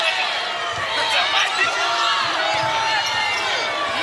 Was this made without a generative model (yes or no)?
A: yes